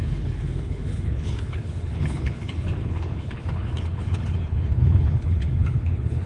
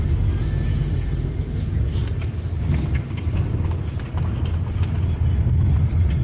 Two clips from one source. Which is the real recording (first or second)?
second